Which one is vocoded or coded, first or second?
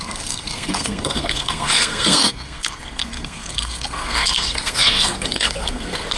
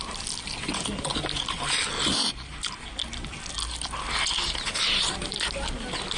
first